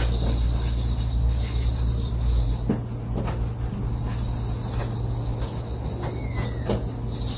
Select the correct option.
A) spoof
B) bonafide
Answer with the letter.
B